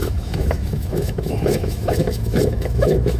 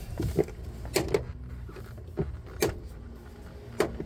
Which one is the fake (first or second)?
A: first